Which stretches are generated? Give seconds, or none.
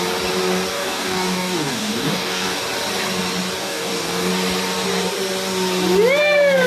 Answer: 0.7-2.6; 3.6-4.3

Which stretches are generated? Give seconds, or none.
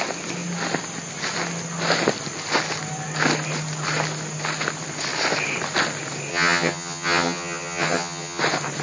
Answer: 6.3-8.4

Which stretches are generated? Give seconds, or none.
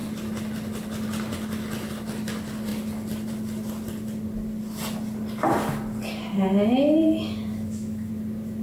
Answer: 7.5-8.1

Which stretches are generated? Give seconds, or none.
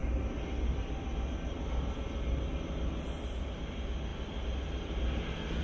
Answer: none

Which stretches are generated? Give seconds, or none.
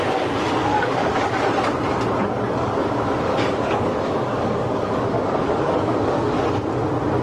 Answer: 0.7-1.3; 2.2-6.4